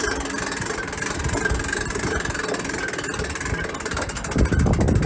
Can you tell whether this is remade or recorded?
recorded